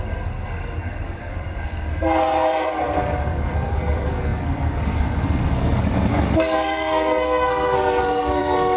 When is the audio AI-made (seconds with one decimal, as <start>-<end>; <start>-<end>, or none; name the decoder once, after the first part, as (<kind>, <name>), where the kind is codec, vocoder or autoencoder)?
0.0-8.8 (codec, SNAC)